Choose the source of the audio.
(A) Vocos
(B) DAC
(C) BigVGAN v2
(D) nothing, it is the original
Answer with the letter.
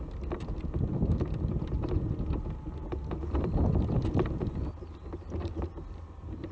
D